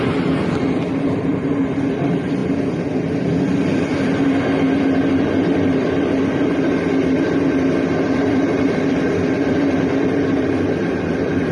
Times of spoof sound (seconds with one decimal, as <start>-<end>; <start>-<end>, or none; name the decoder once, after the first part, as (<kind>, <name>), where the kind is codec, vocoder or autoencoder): 0.0-2.4 (vocoder, BigVGAN v2); 5.1-11.5